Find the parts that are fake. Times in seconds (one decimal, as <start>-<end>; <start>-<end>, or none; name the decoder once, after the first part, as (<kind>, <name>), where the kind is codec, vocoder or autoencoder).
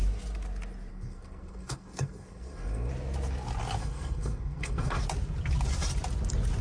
0.9-2.9 (codec, SNAC); 3.8-5.0